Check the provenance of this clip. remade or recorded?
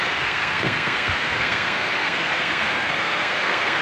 remade